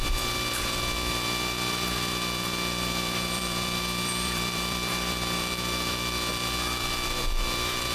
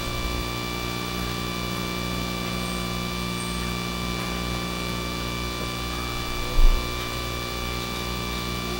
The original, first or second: second